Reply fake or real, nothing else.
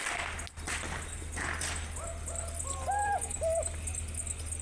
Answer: real